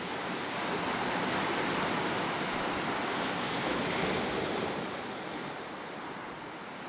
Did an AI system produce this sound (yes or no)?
no